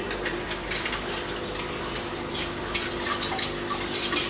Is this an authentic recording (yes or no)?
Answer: yes